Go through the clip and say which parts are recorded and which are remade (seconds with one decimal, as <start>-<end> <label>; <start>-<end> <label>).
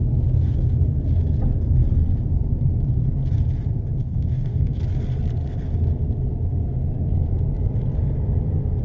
0.0-4.0 recorded; 4.0-4.8 remade; 4.8-8.8 recorded